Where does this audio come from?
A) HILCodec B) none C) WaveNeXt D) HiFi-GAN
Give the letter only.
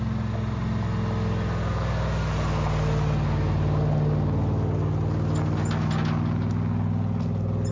B